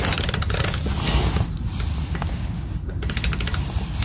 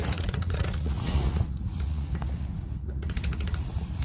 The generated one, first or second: second